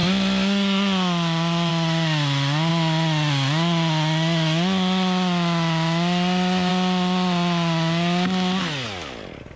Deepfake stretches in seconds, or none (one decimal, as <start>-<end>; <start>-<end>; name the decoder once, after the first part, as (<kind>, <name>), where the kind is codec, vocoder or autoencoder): none